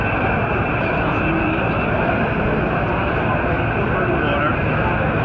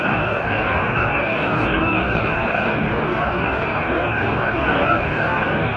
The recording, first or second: first